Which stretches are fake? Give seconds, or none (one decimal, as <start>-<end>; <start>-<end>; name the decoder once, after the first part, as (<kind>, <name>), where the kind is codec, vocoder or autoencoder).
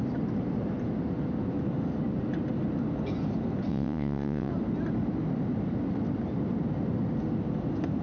3.7-4.5 (vocoder, WaveNeXt)